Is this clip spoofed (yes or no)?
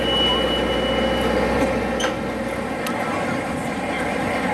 no